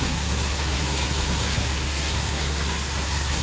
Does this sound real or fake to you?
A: fake